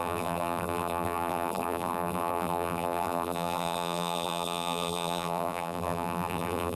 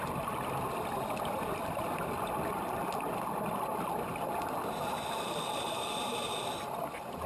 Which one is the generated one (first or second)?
first